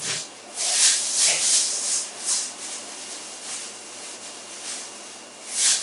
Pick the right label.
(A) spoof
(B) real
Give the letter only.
B